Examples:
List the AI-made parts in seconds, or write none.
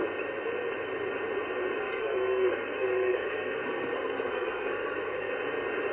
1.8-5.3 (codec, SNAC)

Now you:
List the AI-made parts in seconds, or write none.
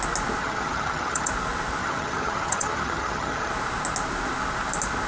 0.4-1.3 (vocoder, HiFi-GAN); 1.8-3.5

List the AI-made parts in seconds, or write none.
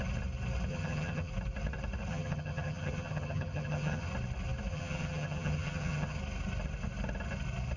0.7-1.3 (vocoder, HiFi-GAN); 2.1-4.1; 4.7-6.2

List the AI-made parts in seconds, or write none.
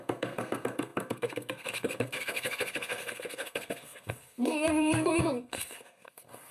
0.0-6.5 (codec, SNAC)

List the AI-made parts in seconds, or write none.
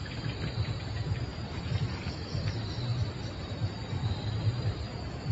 0.8-1.3 (vocoder, BigVGAN v2); 2.5-5.3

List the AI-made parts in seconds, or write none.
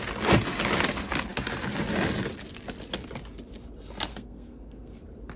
4.1-5.0 (codec, SNAC)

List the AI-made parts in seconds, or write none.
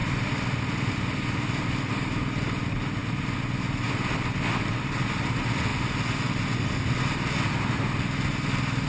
none